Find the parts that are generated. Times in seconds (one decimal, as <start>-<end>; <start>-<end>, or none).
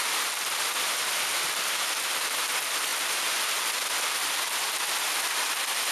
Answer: 2.9-3.7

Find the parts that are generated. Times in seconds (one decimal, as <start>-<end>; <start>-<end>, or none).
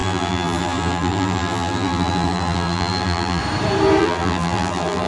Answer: 0.0-3.4; 4.0-5.1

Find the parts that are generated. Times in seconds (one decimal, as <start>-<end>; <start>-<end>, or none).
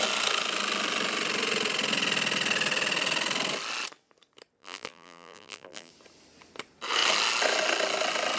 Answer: 4.6-5.9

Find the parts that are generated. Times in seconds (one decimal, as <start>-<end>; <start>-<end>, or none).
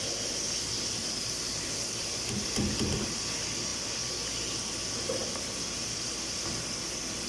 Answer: 3.7-4.8; 5.2-6.4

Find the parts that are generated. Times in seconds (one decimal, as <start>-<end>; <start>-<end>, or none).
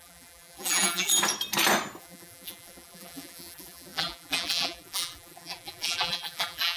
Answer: 0.0-1.1; 2.0-6.8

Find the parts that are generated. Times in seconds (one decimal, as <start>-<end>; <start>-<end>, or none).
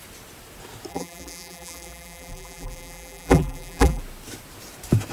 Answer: 0.9-4.0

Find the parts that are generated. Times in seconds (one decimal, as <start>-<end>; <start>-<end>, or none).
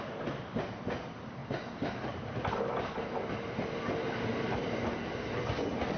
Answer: 1.4-3.7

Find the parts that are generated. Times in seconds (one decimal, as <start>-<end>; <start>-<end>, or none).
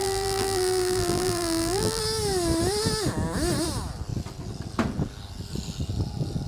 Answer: 0.0-2.0